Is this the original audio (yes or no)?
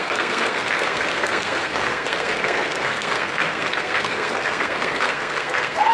no